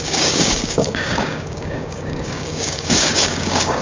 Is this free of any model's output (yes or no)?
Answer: no